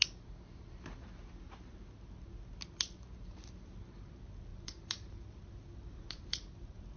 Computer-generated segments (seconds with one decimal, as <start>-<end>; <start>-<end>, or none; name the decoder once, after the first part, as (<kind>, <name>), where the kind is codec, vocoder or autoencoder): 4.5-7.0 (vocoder, BigVGAN v2)